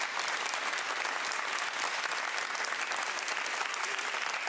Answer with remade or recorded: recorded